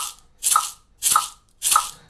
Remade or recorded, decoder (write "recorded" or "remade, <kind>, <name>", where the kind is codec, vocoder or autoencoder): recorded